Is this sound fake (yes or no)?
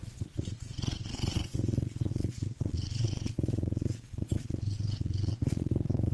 yes